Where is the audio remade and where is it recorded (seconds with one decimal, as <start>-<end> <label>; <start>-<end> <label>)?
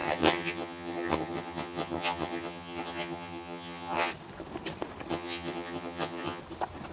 0.0-4.1 remade; 4.1-5.1 recorded; 5.1-6.4 remade; 6.4-6.9 recorded